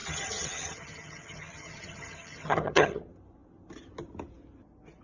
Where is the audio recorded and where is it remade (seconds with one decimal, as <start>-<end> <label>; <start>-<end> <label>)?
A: 0.0-3.0 remade; 3.0-5.0 recorded